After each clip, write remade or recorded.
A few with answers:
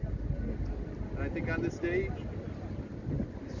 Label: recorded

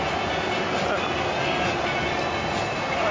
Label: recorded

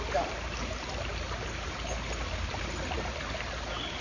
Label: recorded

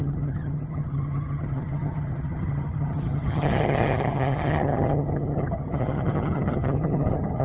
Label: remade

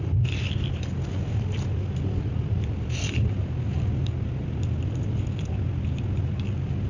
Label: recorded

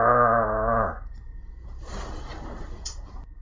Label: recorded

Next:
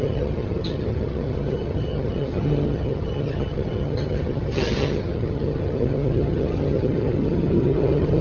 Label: remade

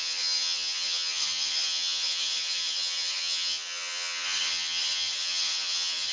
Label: remade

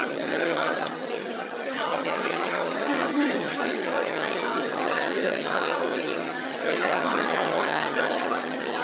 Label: remade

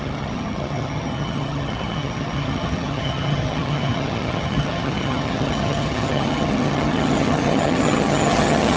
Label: remade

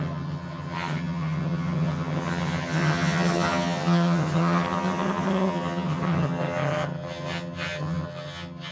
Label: remade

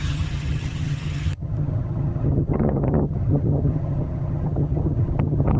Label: remade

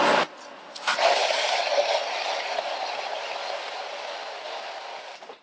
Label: recorded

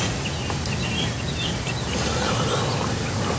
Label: recorded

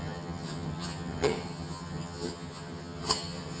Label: remade